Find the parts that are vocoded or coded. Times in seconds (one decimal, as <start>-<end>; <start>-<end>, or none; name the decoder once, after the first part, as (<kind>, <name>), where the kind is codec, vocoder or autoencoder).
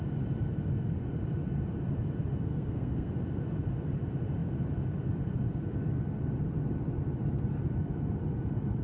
2.5-3.1 (codec, SNAC)